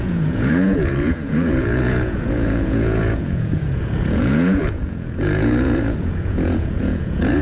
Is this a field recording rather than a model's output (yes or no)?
no